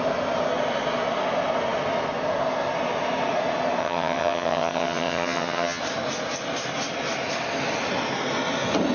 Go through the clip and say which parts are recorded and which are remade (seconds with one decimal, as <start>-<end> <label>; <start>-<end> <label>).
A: 0.0-3.8 recorded; 3.8-5.8 remade; 5.8-8.9 recorded